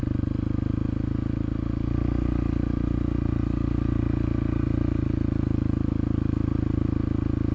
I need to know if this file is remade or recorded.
recorded